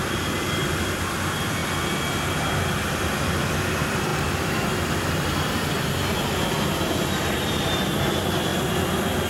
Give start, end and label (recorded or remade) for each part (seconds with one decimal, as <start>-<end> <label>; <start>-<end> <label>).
0.0-1.6 remade; 1.6-2.7 recorded; 2.7-4.1 remade; 4.1-8.0 recorded; 8.0-8.5 remade; 8.5-9.3 recorded